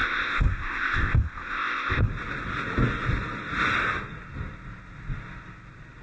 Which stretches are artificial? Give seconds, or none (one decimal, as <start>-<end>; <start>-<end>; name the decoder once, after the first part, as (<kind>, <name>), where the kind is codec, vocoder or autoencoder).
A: 0.0-2.1 (codec, ZipCodec)